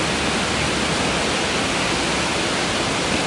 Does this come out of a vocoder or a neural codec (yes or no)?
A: no